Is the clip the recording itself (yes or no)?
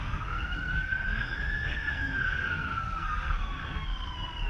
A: no